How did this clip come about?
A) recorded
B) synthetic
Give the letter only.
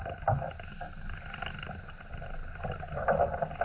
A